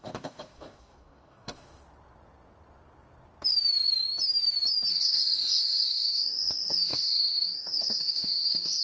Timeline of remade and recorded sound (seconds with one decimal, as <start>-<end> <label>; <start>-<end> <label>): 0.0-1.8 remade; 1.8-4.9 recorded; 4.9-8.8 remade